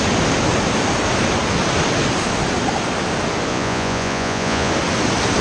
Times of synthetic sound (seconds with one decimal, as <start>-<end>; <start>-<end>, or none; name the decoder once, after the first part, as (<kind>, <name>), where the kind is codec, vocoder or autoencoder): 3.5-4.7 (vocoder, Vocos)